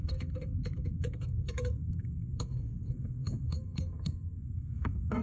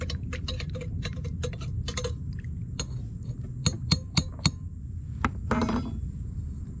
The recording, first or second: second